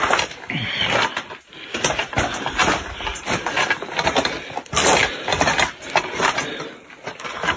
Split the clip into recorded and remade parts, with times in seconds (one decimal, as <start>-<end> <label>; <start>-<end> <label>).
0.0-3.1 recorded; 3.1-3.9 remade; 3.9-7.6 recorded